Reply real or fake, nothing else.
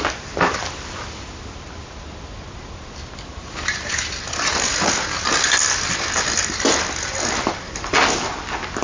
real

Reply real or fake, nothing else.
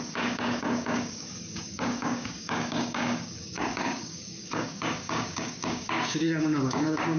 fake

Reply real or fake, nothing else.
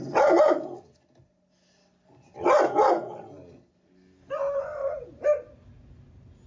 real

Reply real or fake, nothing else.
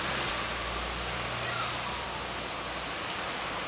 real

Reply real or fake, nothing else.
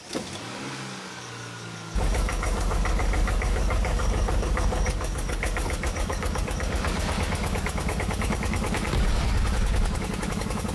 fake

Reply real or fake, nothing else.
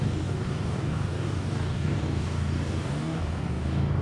fake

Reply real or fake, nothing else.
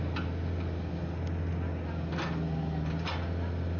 real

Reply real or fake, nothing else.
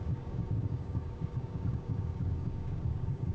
fake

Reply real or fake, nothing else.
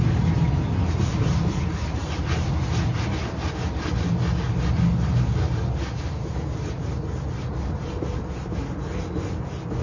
real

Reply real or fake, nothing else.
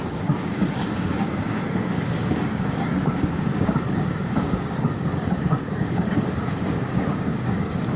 fake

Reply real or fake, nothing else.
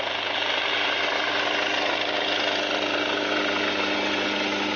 real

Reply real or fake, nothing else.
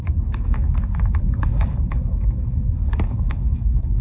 fake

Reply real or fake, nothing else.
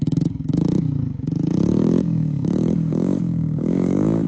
fake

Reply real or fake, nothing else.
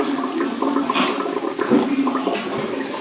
real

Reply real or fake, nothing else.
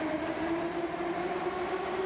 real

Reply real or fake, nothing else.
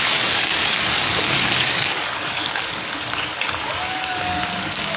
fake